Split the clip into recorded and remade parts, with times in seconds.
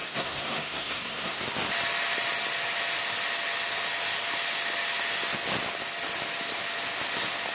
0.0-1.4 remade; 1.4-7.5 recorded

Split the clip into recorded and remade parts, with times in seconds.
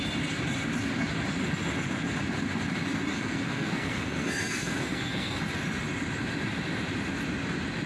0.0-3.1 recorded; 3.1-5.4 remade; 5.4-7.9 recorded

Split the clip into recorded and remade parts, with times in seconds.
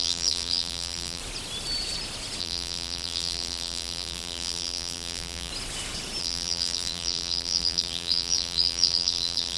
0.0-1.2 remade; 1.2-2.4 recorded; 2.4-5.5 remade; 5.5-6.2 recorded; 6.2-9.6 remade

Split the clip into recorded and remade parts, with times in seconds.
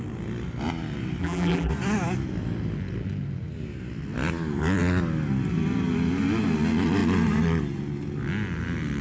0.0-1.2 recorded; 1.2-1.7 remade; 1.7-9.0 recorded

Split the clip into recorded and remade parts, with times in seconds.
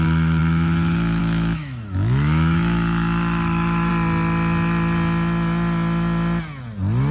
0.0-3.9 remade; 3.9-7.1 recorded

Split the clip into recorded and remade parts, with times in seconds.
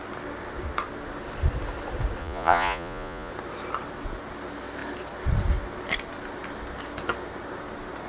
0.0-2.2 recorded; 2.2-3.3 remade; 3.3-8.1 recorded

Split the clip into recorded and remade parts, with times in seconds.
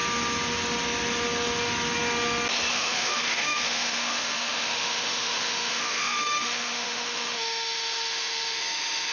0.0-2.7 recorded; 2.7-9.1 remade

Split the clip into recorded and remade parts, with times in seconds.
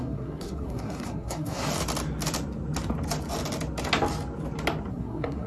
0.0-1.7 remade; 1.7-4.9 recorded; 4.9-5.5 remade